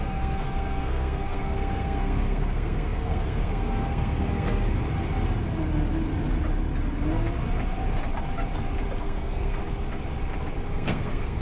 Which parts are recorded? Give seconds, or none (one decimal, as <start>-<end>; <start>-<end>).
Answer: 4.8-9.0; 9.6-10.7